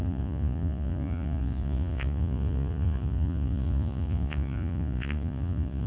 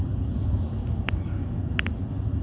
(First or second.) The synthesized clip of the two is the first